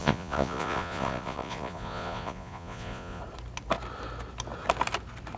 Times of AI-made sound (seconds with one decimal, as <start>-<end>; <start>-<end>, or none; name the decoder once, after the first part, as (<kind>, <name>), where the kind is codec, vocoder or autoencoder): 0.0-3.2 (vocoder, Vocos)